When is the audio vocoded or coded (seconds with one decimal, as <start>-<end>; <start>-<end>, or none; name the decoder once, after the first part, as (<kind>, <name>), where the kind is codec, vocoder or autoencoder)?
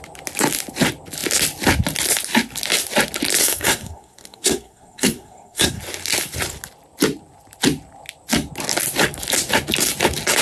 3.4-5.8 (codec, SNAC)